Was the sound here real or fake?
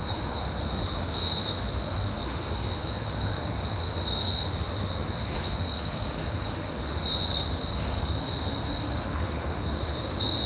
fake